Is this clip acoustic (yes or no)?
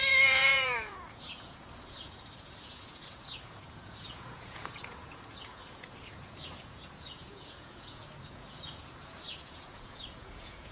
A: no